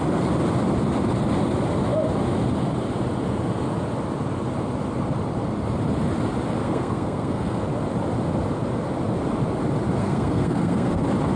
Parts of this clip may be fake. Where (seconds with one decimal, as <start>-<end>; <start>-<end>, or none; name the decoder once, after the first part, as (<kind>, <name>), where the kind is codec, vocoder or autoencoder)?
6.6-7.6 (codec, SNAC); 10.0-11.0